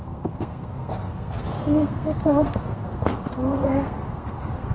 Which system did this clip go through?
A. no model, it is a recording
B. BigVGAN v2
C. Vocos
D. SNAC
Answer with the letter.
D